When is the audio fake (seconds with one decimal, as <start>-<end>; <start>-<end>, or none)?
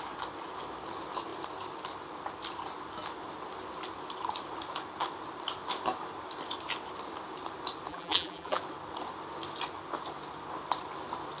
7.9-8.6